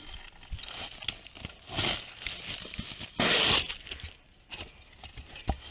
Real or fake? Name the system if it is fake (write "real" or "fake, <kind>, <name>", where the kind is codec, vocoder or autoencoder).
real